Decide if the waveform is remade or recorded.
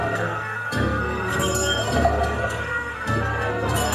remade